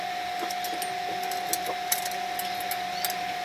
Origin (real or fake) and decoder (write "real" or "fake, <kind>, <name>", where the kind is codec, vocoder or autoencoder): real